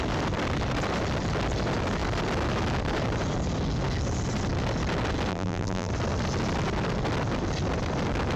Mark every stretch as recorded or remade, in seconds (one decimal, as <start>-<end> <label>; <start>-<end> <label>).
0.0-5.3 recorded; 5.3-5.9 remade; 5.9-8.4 recorded